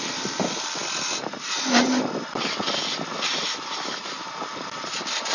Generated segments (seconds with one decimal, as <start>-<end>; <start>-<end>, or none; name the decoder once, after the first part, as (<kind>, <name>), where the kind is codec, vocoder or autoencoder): none